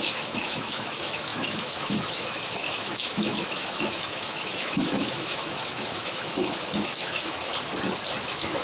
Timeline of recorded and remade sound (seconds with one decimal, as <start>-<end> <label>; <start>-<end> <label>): 0.0-7.5 remade; 7.5-8.2 recorded; 8.2-8.6 remade